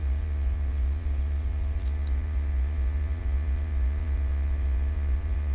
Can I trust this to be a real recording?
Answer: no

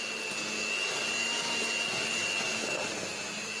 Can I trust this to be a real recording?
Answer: yes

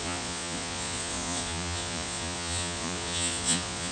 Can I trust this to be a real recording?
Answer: no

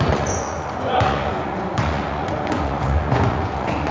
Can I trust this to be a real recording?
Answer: no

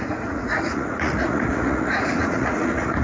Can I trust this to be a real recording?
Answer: no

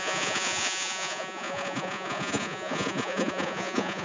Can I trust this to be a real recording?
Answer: no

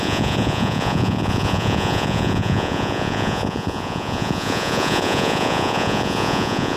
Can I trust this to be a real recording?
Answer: no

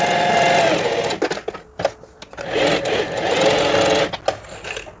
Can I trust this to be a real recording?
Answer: yes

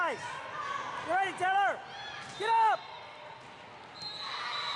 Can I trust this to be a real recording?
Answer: yes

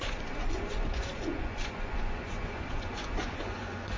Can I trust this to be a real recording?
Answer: no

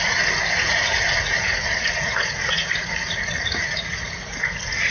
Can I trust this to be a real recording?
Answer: no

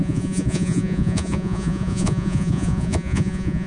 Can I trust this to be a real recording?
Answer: no